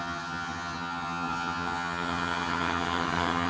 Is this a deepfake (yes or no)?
yes